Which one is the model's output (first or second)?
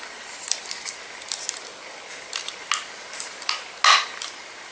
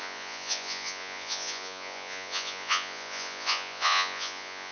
second